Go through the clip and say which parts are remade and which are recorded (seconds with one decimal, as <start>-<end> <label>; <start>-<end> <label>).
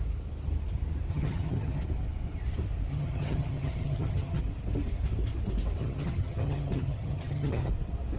0.0-1.1 recorded; 1.1-1.8 remade; 1.8-2.9 recorded; 2.9-4.4 remade; 4.4-5.8 recorded; 5.8-7.7 remade; 7.7-8.2 recorded